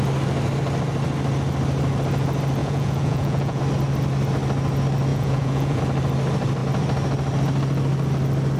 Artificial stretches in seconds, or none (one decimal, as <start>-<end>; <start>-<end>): 2.6-3.6; 5.1-5.8